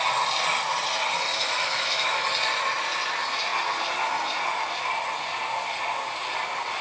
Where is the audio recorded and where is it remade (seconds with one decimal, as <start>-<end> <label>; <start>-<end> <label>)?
0.0-1.3 recorded; 1.3-2.3 remade; 2.3-6.8 recorded